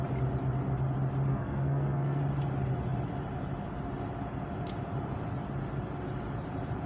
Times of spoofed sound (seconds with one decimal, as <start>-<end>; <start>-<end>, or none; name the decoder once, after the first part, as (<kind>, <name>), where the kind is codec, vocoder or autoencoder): 1.3-2.2 (codec, SNAC)